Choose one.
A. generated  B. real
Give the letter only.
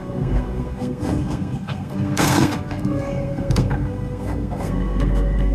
A